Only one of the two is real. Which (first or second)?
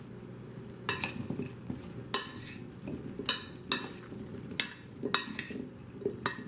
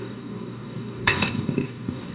first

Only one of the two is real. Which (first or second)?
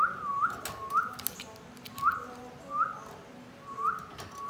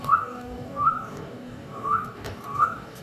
first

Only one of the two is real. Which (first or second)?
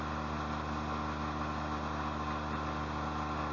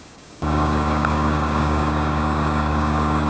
first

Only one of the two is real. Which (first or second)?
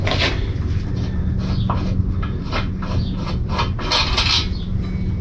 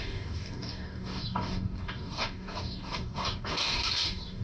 first